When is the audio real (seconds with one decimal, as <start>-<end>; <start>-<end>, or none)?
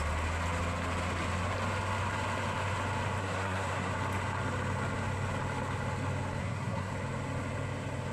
0.0-3.2; 3.9-6.4; 6.9-8.1